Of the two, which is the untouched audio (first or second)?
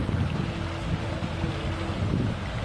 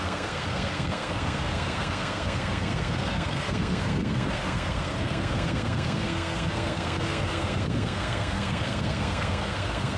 first